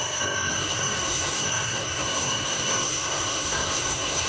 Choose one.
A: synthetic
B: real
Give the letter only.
A